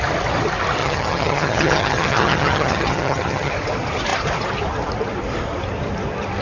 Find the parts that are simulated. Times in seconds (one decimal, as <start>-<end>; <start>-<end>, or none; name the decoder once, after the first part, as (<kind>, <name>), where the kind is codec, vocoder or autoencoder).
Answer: 0.8-3.5 (vocoder, HiFi-GAN)